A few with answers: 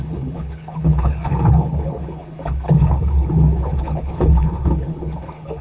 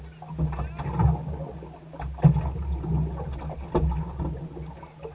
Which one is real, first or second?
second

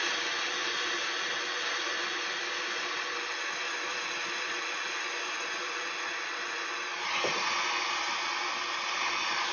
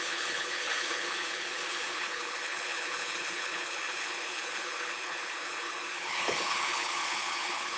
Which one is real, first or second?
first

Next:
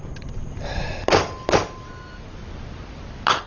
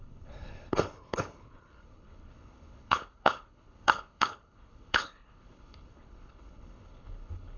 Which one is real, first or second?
first